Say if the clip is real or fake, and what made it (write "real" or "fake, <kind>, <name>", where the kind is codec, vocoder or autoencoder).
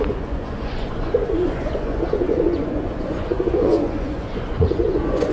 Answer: fake, vocoder, Vocos